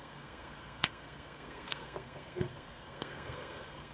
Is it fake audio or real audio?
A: fake